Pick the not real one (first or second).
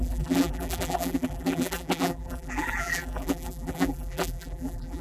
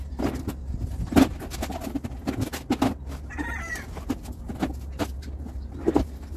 first